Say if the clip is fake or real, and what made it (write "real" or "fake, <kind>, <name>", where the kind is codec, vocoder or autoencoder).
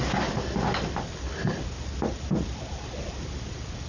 real